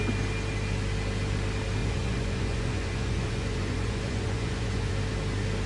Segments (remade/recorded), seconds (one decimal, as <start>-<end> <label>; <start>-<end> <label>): 0.0-1.8 recorded; 1.8-4.9 remade; 4.9-5.7 recorded

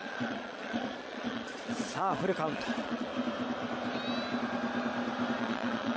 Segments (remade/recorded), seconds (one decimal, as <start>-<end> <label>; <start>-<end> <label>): 0.0-3.1 remade; 3.1-5.4 recorded; 5.4-6.0 remade

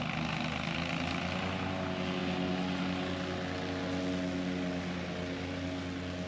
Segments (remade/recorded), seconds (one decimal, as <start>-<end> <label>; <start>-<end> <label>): 0.0-6.3 recorded

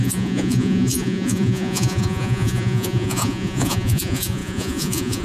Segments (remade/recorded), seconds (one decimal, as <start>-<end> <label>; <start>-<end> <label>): 0.0-5.2 remade

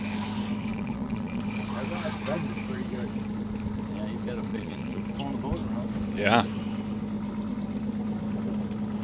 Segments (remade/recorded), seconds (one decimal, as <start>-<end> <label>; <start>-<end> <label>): 0.0-0.7 recorded; 0.7-1.4 remade; 1.4-4.5 recorded; 4.5-5.0 remade; 5.0-9.0 recorded

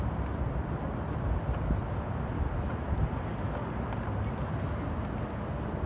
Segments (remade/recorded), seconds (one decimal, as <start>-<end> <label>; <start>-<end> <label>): 0.0-5.9 recorded

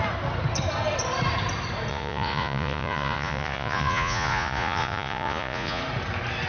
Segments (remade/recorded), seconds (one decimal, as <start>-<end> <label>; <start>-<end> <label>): 0.0-1.9 recorded; 1.9-5.8 remade; 5.8-6.5 recorded